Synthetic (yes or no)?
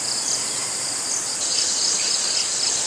no